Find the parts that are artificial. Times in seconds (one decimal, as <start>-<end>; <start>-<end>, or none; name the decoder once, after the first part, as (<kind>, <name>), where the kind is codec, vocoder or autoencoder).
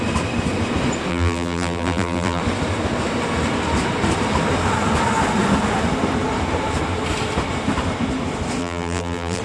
1.1-2.4 (vocoder, BigVGAN v2); 8.6-9.4